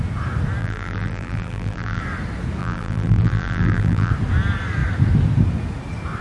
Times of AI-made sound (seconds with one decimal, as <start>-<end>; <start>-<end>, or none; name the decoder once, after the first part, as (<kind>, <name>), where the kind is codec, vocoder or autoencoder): 0.6-2.0 (vocoder, BigVGAN v2); 2.6-4.1